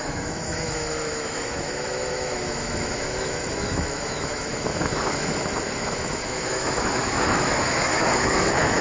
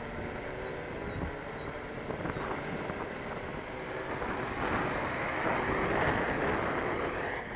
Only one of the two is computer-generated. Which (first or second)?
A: first